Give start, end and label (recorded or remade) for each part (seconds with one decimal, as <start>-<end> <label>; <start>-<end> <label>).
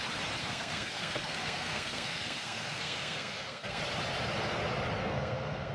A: 0.0-0.4 recorded; 0.4-3.8 remade; 3.8-5.0 recorded; 5.0-5.7 remade